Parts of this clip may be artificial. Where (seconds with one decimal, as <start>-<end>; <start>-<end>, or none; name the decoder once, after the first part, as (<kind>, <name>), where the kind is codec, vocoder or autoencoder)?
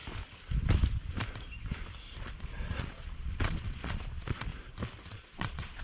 2.2-4.5 (vocoder, Vocos); 5.1-5.8